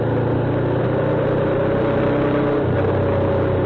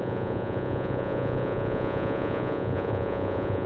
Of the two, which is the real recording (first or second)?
first